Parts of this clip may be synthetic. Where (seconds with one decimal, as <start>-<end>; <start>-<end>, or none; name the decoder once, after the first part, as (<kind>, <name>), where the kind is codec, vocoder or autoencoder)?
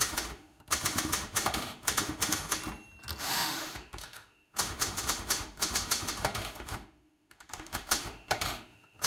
0.0-2.6 (autoencoder, DAC-VAE); 3.2-9.1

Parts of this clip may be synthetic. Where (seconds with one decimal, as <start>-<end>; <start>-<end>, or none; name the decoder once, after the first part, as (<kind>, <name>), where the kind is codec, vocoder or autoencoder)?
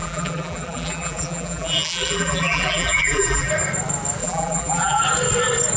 0.0-3.5 (vocoder, BigVGAN v2); 4.2-5.0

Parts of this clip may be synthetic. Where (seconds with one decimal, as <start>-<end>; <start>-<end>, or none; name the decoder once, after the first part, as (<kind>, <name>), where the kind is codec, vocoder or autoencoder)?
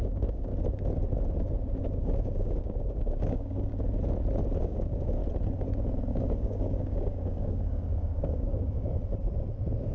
0.0-0.5 (codec, DAC); 1.8-3.7; 4.6-5.2; 6.1-8.9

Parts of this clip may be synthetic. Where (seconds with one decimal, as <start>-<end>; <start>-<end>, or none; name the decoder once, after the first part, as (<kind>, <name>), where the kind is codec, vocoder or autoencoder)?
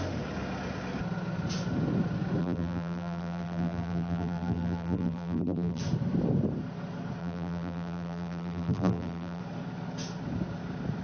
2.4-5.8 (vocoder, BigVGAN v2); 7.2-9.4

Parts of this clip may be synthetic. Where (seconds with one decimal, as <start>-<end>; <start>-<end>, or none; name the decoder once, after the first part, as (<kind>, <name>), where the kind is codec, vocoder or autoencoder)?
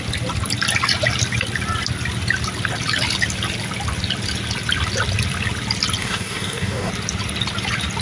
6.0-6.9 (codec, DAC)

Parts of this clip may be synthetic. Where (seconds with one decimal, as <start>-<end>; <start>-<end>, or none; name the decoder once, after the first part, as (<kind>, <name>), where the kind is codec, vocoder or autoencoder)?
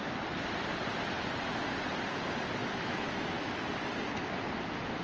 2.6-3.7 (autoencoder, DAC-VAE)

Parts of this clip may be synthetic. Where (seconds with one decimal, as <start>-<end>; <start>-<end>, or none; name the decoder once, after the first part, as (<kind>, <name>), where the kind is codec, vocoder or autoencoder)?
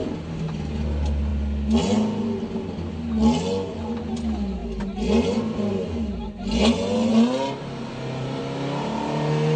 none